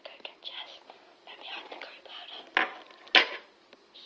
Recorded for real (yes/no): yes